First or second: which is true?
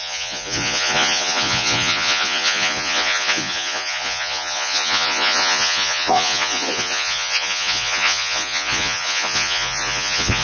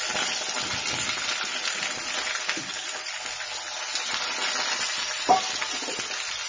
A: second